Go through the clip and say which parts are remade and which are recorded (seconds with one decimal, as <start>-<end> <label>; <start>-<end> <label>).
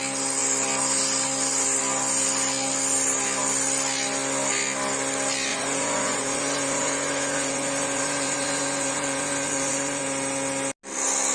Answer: 0.0-5.5 recorded; 5.5-10.0 remade; 10.0-11.3 recorded